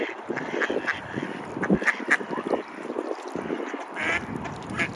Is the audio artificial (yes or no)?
yes